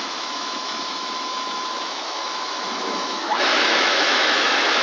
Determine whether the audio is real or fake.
fake